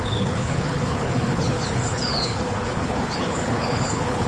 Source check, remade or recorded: remade